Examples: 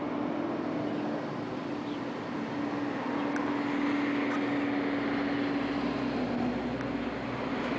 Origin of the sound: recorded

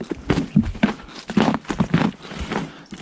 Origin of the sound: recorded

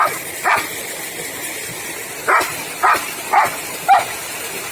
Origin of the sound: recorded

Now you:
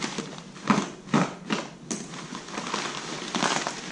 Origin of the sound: recorded